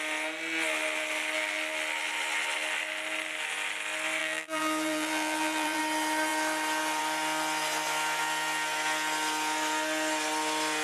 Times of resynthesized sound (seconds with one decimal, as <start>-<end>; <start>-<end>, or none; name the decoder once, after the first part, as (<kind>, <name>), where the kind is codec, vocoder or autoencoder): 4.2-5.8 (vocoder, BigVGAN v2)